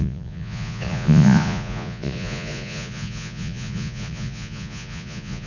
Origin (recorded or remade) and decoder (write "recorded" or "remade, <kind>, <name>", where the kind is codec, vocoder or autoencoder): remade, vocoder, Vocos